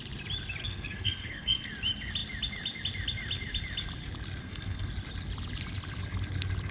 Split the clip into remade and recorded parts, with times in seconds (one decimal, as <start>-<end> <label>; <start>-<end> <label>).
0.0-0.6 recorded; 0.6-1.7 remade; 1.7-4.4 recorded; 4.4-4.9 remade; 4.9-6.7 recorded